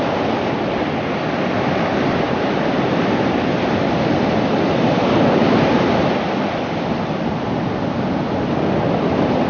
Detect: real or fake fake